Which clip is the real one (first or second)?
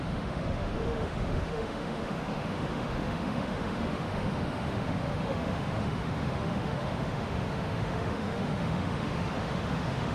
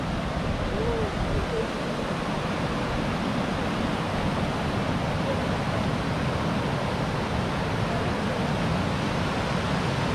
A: second